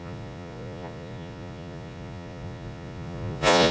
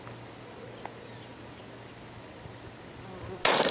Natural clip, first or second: second